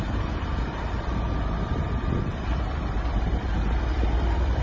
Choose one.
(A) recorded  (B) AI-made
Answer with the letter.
B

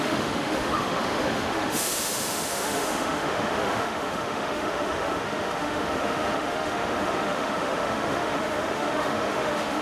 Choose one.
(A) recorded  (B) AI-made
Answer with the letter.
B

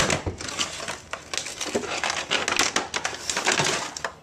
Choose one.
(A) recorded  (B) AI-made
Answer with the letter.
A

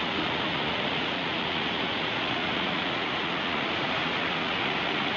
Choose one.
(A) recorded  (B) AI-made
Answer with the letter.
B